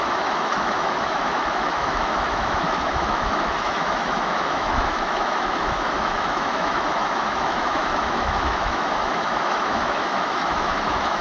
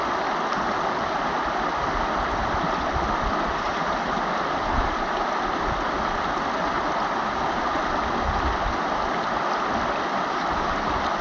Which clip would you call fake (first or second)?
first